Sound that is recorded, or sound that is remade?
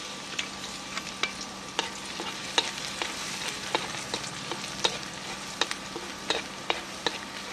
recorded